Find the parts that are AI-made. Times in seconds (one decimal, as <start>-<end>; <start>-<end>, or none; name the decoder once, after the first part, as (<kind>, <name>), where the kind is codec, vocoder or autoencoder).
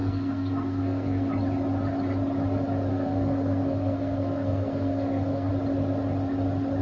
0.0-1.3 (codec, SNAC); 2.9-5.5